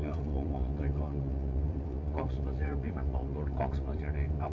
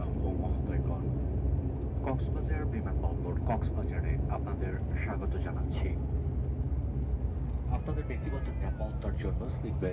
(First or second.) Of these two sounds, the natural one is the second